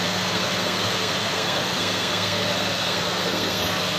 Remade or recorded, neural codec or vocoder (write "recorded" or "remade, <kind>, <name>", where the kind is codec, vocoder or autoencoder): remade, codec, SNAC